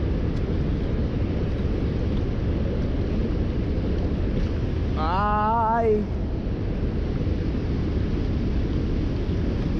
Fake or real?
real